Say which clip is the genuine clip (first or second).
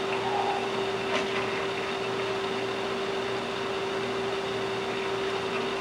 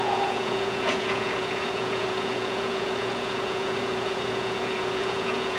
first